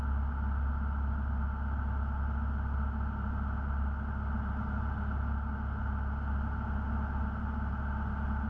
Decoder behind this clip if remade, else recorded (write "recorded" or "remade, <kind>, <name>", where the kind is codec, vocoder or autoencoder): recorded